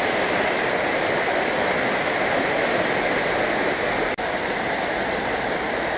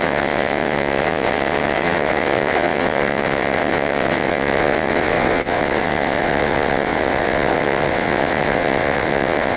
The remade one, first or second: second